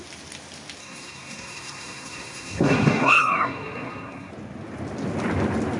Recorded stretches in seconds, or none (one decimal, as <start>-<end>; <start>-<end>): 0.0-0.8; 4.3-5.8